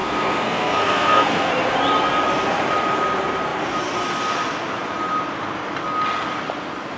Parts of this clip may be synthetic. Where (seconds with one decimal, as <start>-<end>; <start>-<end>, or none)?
0.0-1.5